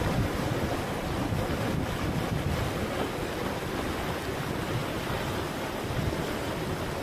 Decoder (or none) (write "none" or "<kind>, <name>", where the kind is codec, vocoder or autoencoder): none